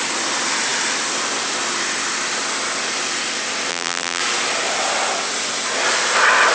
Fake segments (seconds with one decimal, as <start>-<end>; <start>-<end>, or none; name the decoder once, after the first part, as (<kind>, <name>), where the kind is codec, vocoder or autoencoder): 3.7-4.2 (vocoder, BigVGAN v2)